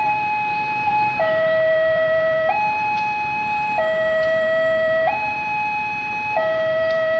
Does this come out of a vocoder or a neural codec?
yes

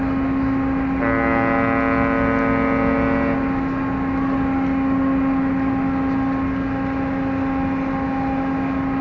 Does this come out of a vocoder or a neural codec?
no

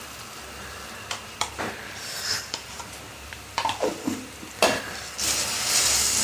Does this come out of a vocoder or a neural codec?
yes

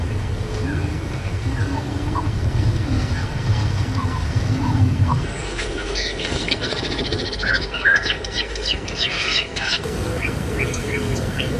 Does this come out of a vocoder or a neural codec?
yes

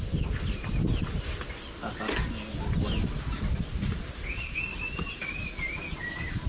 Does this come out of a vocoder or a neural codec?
no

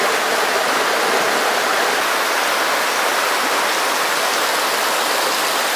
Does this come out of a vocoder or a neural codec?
no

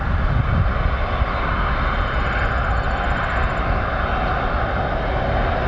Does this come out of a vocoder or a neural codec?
no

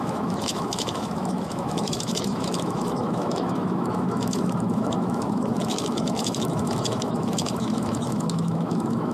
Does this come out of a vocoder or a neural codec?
yes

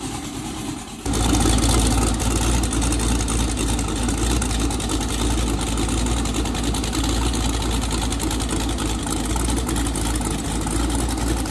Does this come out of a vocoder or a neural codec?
no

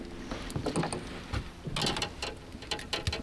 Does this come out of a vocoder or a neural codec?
no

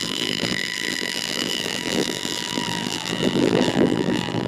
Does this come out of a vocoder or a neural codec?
yes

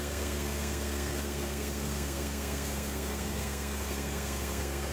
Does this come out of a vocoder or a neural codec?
yes